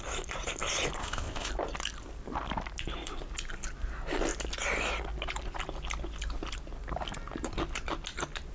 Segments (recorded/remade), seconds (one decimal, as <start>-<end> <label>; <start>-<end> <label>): 0.0-1.0 recorded; 1.0-1.5 remade; 1.5-8.5 recorded